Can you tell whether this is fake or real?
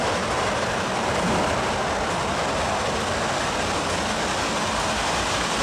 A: real